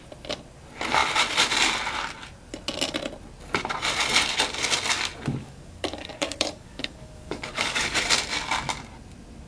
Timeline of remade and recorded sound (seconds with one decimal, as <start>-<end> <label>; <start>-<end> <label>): 0.0-5.4 recorded; 5.4-8.0 remade; 8.0-9.5 recorded